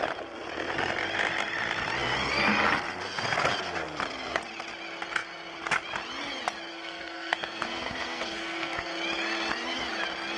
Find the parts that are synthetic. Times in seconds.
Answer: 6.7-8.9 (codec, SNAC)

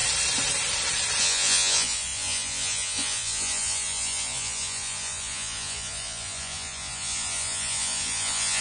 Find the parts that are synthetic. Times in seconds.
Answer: 1.2-8.6 (vocoder, Vocos)

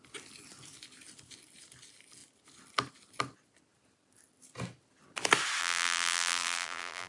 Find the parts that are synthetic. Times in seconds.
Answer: 5.6-7.1 (vocoder, BigVGAN v2)

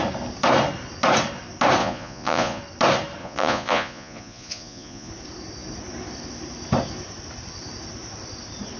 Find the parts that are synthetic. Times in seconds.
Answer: 1.8-2.6 (vocoder, Vocos); 3.2-5.1

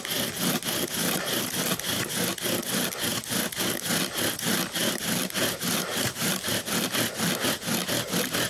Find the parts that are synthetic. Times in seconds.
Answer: 1.0-2.2 (vocoder, BigVGAN v2); 4.8-6.6

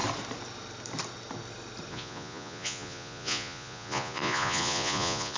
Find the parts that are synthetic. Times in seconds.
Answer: 1.9-5.4 (vocoder, Vocos)